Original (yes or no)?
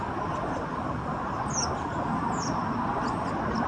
yes